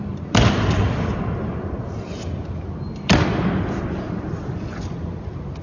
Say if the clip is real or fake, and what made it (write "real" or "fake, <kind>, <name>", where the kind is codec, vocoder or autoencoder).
real